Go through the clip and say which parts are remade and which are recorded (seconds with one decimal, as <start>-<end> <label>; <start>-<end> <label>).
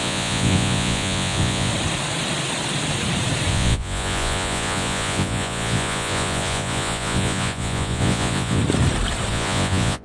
0.0-1.7 remade; 1.7-3.5 recorded; 3.5-8.6 remade; 8.6-9.3 recorded; 9.3-10.0 remade